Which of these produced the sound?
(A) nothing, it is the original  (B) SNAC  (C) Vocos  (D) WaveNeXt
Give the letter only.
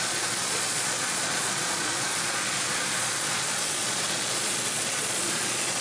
C